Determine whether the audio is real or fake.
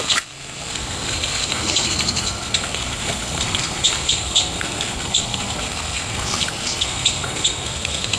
fake